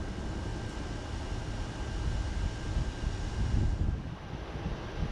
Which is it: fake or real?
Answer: real